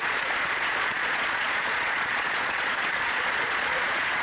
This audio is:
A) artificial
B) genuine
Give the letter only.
A